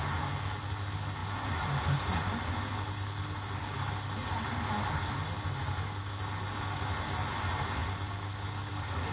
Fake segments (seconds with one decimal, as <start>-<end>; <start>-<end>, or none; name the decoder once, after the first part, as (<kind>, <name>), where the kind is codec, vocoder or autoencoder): none